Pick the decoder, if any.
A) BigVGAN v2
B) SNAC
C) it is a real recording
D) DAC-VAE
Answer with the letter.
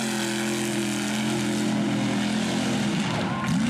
C